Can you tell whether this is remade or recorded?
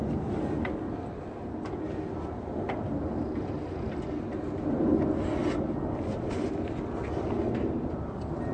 recorded